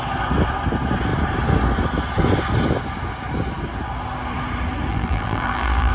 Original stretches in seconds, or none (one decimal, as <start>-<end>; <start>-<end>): 0.0-4.9